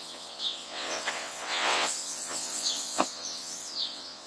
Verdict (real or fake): fake